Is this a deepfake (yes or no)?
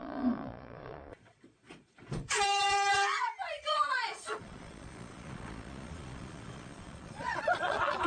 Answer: yes